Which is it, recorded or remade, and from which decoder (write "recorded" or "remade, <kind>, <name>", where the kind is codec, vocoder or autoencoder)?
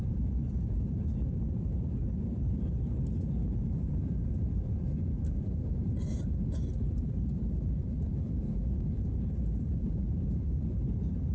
remade, vocoder, BigVGAN v2